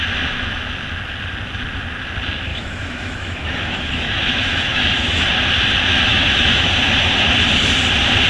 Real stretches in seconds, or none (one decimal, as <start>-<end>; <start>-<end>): 0.0-2.5; 5.2-6.1; 6.7-8.3